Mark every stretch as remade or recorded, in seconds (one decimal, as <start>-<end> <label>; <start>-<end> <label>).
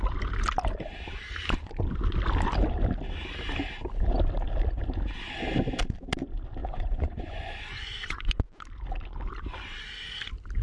0.0-6.6 recorded; 6.6-8.3 remade; 8.3-10.6 recorded